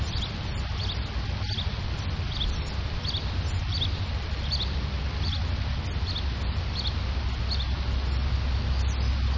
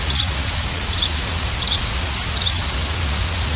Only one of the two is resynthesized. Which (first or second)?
second